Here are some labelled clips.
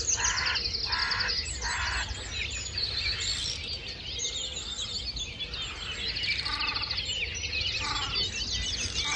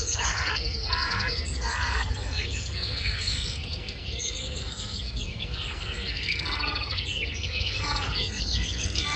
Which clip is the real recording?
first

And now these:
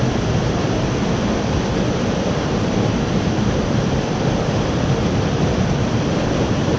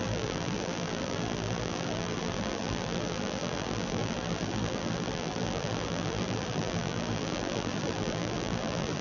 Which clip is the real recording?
first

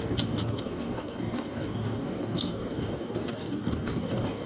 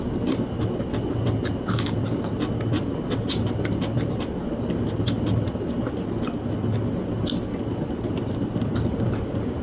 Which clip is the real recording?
second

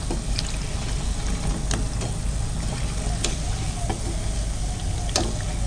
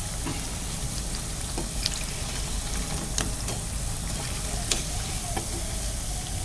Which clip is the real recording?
first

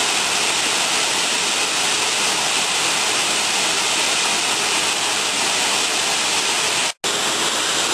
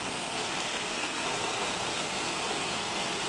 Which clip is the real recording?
first